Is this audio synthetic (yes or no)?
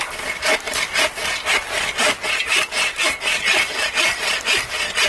no